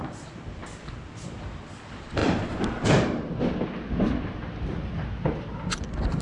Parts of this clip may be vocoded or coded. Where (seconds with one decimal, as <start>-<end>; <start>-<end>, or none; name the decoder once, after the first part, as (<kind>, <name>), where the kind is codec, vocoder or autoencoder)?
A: none